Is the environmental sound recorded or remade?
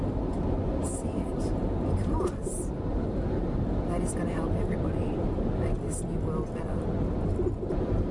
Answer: recorded